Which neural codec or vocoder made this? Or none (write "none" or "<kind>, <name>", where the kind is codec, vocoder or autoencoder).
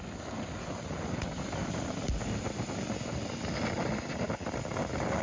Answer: none